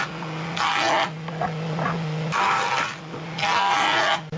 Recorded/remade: recorded